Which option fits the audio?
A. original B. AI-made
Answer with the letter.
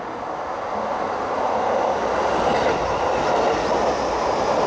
A